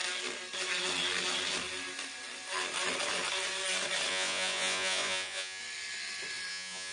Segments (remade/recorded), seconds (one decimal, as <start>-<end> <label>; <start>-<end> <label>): 0.0-4.1 recorded; 4.1-5.6 remade; 5.6-6.5 recorded; 6.5-6.9 remade